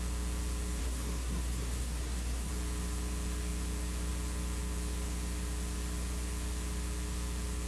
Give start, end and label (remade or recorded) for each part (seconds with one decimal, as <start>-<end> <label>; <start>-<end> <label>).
0.0-0.8 recorded; 0.8-2.5 remade; 2.5-7.7 recorded

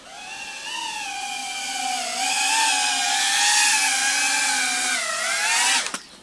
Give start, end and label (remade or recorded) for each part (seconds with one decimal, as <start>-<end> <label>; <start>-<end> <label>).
0.0-6.2 recorded

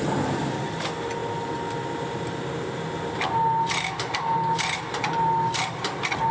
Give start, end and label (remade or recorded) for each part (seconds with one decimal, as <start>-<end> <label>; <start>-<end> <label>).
0.0-6.3 recorded

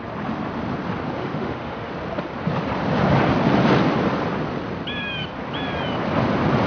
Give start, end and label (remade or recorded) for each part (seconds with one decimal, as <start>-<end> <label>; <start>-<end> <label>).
0.0-1.2 recorded; 1.2-1.9 remade; 1.9-6.7 recorded

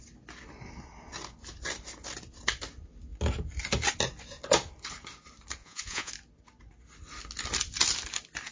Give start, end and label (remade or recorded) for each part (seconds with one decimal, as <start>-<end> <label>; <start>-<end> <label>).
0.0-5.6 recorded; 5.6-6.1 remade; 6.1-8.5 recorded

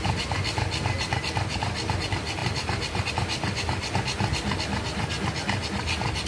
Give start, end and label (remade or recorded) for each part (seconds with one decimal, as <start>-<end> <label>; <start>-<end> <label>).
0.0-6.3 recorded

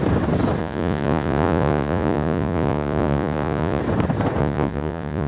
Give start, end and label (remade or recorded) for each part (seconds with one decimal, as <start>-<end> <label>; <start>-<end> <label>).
0.0-0.6 recorded; 0.6-3.8 remade; 3.8-4.4 recorded; 4.4-5.3 remade